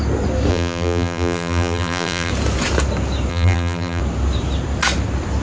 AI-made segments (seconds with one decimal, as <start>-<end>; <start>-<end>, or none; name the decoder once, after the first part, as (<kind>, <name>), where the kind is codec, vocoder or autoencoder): 0.5-2.3 (vocoder, BigVGAN v2); 3.3-4.0